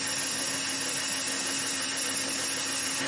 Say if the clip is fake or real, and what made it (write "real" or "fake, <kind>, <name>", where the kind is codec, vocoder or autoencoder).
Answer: real